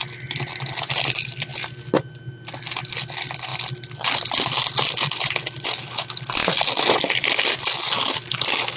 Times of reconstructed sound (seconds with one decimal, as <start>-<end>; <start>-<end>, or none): none